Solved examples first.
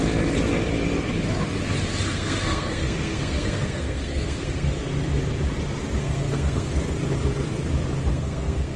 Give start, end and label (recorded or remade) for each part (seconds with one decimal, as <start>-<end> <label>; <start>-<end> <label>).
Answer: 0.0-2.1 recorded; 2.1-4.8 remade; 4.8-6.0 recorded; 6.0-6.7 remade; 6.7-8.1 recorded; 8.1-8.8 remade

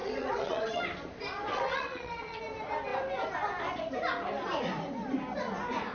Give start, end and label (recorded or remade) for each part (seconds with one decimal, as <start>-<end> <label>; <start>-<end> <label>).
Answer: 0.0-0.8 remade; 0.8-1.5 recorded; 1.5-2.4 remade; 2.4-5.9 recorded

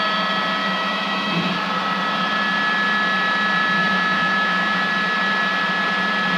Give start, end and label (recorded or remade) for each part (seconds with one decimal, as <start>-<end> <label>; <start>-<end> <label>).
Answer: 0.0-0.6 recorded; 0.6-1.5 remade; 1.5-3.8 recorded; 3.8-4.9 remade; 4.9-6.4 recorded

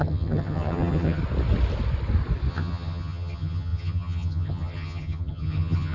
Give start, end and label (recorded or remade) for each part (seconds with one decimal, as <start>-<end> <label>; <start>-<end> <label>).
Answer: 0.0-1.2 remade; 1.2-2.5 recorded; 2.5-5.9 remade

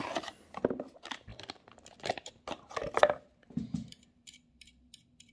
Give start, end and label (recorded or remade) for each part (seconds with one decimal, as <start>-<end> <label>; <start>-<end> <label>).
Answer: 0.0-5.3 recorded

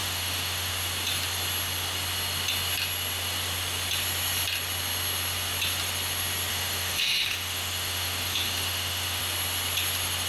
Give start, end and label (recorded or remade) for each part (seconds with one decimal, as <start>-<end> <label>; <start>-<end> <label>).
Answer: 0.0-0.7 remade; 0.7-6.5 recorded; 6.5-9.2 remade; 9.2-10.3 recorded

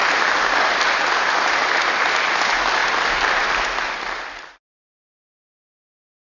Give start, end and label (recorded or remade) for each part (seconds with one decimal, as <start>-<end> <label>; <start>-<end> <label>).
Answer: 0.0-6.2 recorded